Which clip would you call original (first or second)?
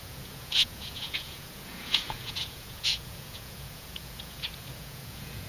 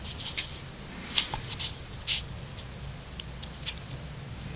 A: second